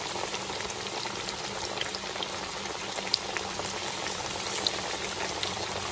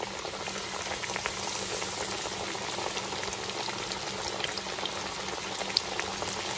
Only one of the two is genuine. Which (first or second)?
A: second